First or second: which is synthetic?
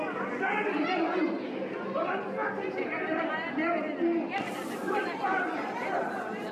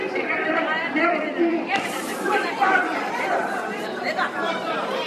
second